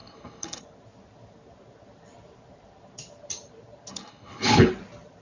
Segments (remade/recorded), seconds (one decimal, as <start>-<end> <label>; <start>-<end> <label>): 0.0-0.6 remade; 0.6-3.9 recorded; 3.9-4.7 remade; 4.7-5.2 recorded